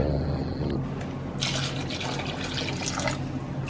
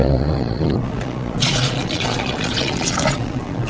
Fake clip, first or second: second